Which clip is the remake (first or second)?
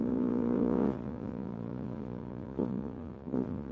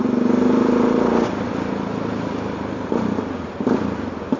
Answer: first